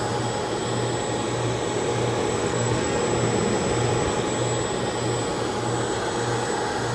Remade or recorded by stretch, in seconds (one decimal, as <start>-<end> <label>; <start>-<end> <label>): 0.0-2.4 recorded; 2.4-3.0 remade; 3.0-6.9 recorded